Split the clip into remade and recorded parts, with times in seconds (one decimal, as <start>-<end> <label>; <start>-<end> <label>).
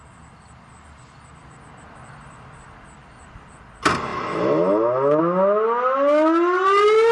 0.0-7.1 recorded